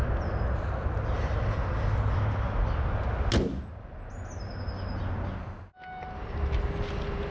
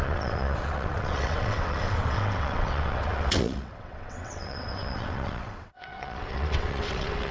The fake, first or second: second